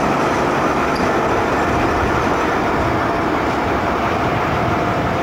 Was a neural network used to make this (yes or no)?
no